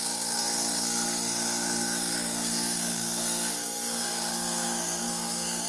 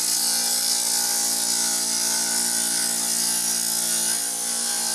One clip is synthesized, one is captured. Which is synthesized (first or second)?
first